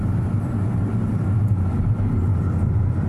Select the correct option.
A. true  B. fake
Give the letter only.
A